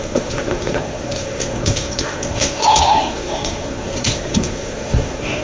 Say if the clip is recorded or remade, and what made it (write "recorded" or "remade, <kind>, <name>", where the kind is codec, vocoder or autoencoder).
remade, codec, SNAC